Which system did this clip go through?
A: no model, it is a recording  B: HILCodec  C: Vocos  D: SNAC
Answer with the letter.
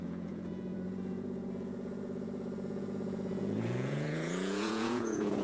C